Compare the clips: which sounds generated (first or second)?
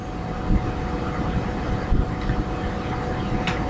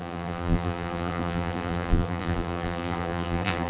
second